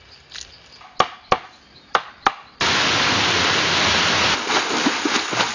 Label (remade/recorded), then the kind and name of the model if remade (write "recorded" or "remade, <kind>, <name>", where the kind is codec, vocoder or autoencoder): recorded